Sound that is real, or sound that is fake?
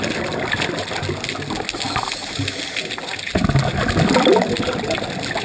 real